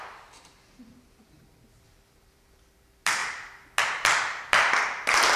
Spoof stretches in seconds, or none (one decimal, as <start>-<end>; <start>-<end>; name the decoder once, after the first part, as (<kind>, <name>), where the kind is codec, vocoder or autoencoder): 0.0-3.2 (vocoder, BigVGAN v2); 3.8-5.4